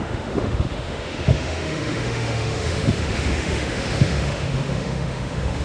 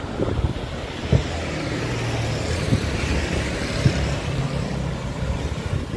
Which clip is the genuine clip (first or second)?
second